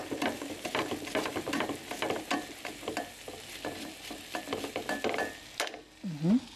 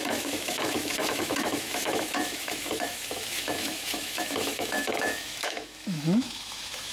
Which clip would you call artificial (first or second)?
second